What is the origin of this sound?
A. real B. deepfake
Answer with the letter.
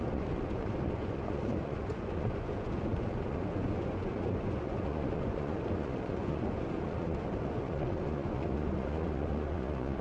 B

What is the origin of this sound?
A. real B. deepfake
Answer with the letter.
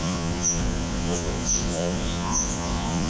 B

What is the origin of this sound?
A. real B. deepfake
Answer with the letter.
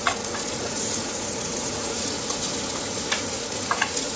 B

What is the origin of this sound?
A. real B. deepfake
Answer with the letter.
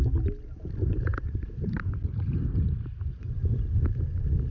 A